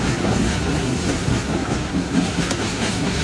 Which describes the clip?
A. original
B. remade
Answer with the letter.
B